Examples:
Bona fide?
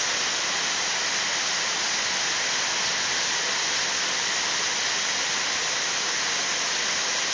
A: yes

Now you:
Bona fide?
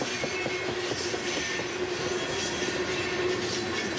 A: yes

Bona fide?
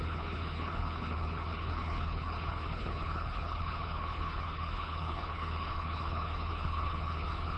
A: no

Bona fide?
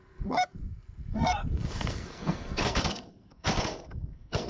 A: no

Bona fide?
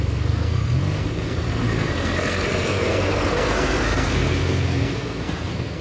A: no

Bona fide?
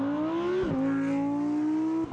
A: yes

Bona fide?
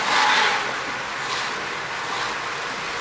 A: yes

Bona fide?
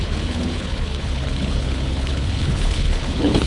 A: no